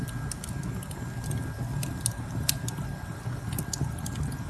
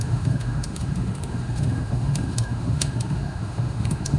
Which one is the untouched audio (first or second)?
first